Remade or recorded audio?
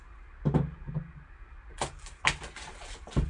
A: recorded